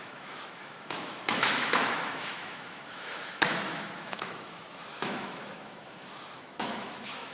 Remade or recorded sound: remade